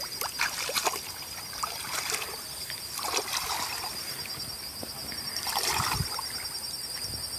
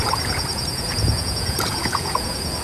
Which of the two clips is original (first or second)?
first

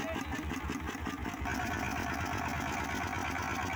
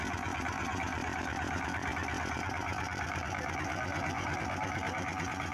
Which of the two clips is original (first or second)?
first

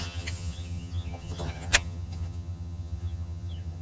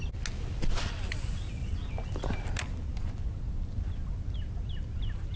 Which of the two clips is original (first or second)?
second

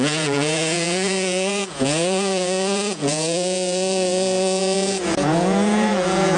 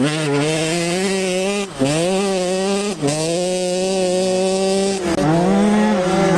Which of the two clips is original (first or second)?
second